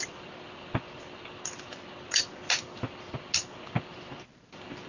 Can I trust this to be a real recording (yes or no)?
yes